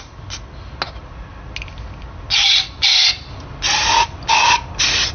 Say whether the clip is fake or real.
real